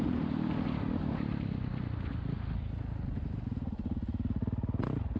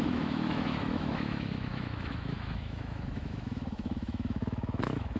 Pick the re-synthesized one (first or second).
second